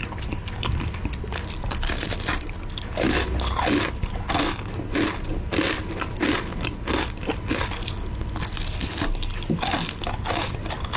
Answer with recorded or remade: recorded